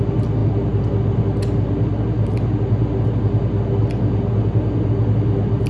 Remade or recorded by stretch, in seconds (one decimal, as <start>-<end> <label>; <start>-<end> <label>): 0.0-5.7 recorded